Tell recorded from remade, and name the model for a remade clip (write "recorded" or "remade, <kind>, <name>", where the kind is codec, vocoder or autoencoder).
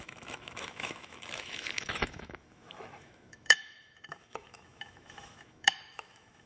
remade, autoencoder, DAC-VAE